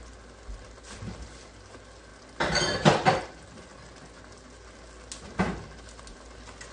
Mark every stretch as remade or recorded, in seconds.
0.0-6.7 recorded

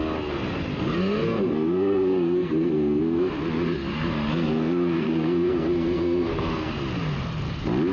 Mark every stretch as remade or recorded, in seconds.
0.0-0.7 recorded; 0.7-3.3 remade; 3.3-3.9 recorded; 3.9-6.7 remade; 6.7-7.9 recorded

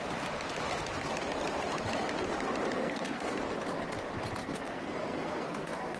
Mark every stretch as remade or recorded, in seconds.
0.0-2.8 recorded; 2.8-3.4 remade; 3.4-4.4 recorded; 4.4-6.0 remade

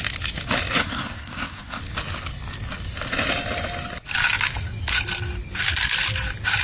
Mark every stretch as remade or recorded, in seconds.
0.0-0.8 recorded; 0.8-1.8 remade; 1.8-6.6 recorded

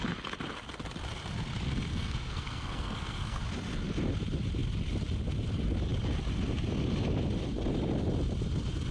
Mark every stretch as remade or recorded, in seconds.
0.0-1.9 recorded; 1.9-3.4 remade; 3.4-8.9 recorded